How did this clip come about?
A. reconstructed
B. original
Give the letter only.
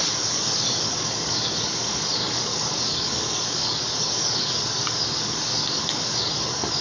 A